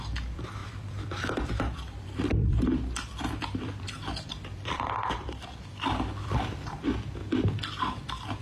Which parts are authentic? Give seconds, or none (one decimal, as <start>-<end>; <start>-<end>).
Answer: 7.2-7.8